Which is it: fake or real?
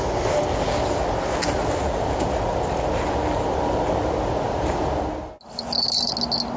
real